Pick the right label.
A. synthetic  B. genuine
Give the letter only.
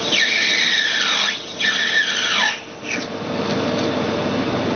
B